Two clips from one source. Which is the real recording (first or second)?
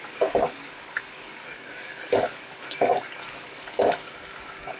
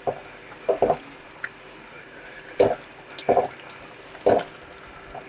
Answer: second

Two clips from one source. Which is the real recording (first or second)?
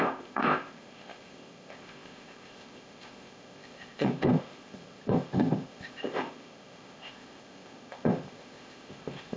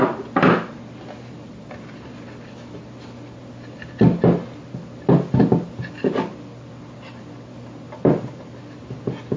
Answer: second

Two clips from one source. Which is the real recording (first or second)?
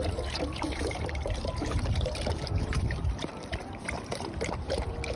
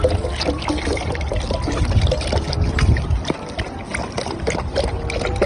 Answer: second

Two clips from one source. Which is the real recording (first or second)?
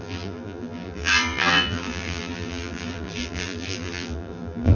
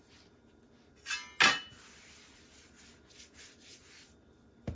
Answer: second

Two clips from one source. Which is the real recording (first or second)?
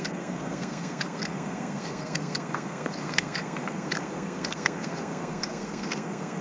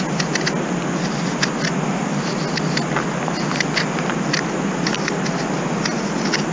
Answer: second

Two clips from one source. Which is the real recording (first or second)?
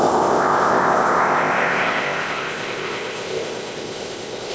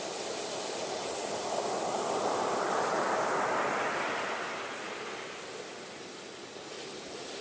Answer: second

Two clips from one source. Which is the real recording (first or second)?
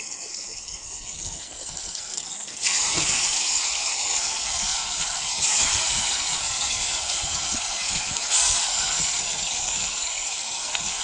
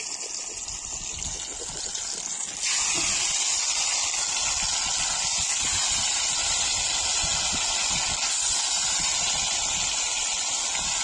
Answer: second